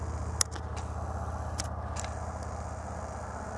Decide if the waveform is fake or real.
real